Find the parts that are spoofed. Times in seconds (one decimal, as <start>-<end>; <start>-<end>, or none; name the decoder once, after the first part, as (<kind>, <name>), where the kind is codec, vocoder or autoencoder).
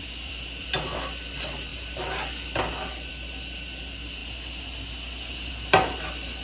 none